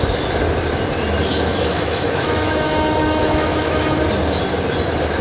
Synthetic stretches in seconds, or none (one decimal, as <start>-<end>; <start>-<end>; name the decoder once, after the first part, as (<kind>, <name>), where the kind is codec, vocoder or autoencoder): 1.3-4.0 (autoencoder, DAC-VAE)

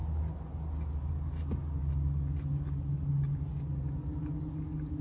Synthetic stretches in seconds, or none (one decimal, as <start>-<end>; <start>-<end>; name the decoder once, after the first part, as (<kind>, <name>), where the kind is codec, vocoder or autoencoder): none

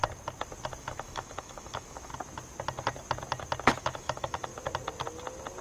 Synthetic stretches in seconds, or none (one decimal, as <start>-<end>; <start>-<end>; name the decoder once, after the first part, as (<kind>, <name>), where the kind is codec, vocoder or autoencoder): 0.8-2.1 (autoencoder, DAC-VAE); 3.8-4.5

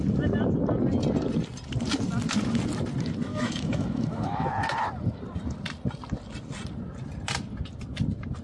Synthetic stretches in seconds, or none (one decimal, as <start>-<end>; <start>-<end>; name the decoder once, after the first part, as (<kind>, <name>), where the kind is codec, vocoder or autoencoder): 3.3-4.5 (autoencoder, DAC-VAE)

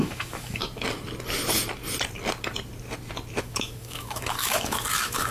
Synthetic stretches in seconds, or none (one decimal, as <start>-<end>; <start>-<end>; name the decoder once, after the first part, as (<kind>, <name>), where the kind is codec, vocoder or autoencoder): 0.0-0.6 (autoencoder, DAC-VAE); 3.4-5.3

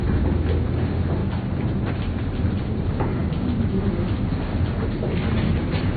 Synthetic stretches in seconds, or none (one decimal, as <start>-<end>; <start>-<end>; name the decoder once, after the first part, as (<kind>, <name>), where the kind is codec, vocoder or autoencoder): none

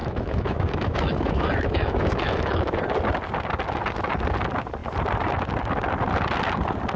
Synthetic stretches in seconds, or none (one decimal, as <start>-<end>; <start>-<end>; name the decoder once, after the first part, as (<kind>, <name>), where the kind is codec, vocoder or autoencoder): 0.0-2.8 (autoencoder, DAC-VAE)

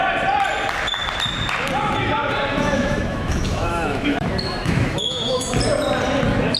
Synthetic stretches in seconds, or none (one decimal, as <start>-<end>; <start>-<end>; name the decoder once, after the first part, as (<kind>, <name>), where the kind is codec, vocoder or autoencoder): 2.5-5.5 (autoencoder, DAC-VAE)